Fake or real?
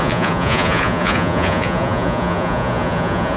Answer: fake